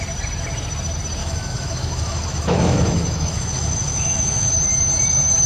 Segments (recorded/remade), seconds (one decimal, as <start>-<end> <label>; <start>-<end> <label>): 0.0-1.2 recorded; 1.2-4.5 remade; 4.5-5.5 recorded